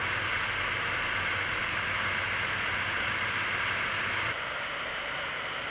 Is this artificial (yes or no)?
no